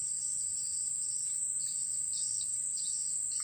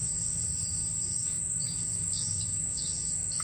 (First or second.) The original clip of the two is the first